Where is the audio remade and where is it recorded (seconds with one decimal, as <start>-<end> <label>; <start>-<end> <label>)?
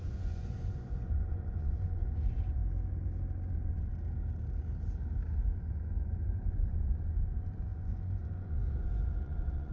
0.0-2.6 remade; 2.6-3.5 recorded; 3.5-3.9 remade; 3.9-5.3 recorded; 5.3-9.7 remade